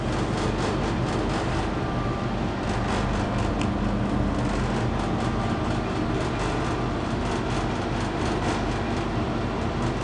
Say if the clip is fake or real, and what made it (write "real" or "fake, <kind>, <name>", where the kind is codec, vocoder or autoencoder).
real